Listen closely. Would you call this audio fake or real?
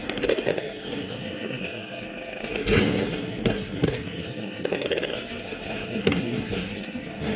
fake